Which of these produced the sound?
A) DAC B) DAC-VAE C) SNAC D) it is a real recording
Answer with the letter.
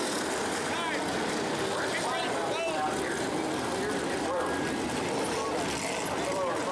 D